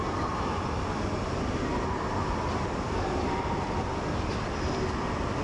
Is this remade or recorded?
recorded